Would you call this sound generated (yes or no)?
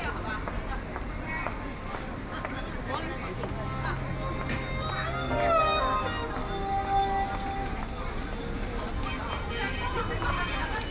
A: no